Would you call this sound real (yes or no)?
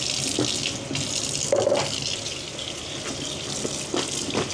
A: yes